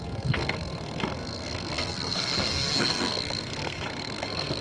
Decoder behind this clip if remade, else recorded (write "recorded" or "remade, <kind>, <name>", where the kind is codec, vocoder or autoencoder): remade, codec, SNAC